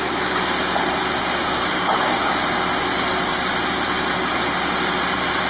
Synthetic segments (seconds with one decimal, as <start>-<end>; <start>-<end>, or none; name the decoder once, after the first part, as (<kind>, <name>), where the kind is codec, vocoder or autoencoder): 1.4-2.3 (codec, DAC)